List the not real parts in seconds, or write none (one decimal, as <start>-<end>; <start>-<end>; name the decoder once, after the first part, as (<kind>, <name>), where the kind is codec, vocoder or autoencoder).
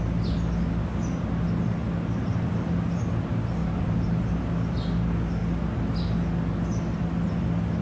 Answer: 3.6-4.2 (vocoder, BigVGAN v2)